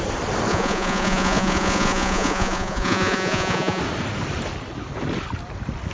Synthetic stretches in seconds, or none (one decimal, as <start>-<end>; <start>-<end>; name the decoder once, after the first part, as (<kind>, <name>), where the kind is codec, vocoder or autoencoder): 0.5-3.8 (vocoder, Vocos)